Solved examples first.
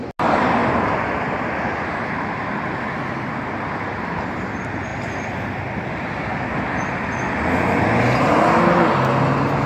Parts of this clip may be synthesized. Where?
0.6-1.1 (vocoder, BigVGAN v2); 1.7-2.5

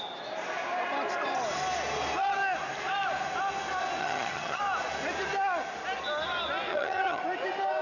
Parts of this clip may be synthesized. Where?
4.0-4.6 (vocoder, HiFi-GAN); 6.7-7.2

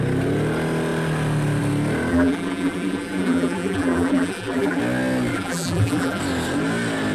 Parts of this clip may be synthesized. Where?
2.1-4.8 (vocoder, BigVGAN v2); 5.3-6.2

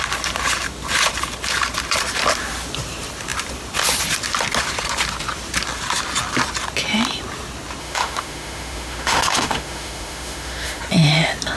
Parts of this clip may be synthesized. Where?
7.8-10.8 (autoencoder, DAC-VAE)

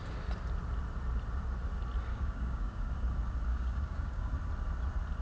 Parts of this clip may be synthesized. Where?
2.1-2.9 (codec, DAC); 3.5-4.3

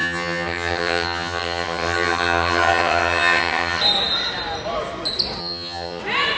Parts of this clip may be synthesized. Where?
0.0-3.8 (vocoder, HiFi-GAN); 5.4-6.0

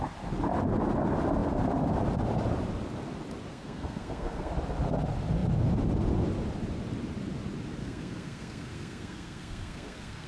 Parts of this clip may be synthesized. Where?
3.5-4.5 (codec, SNAC); 7.8-10.3

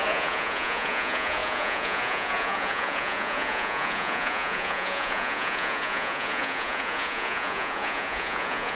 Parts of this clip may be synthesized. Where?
0.0-8.7 (vocoder, Vocos)